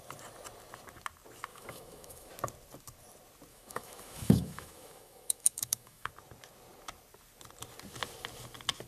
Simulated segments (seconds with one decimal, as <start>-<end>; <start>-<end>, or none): 1.5-2.3; 3.5-6.1